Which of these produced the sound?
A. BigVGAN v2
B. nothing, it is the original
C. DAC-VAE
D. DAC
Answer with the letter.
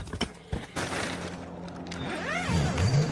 B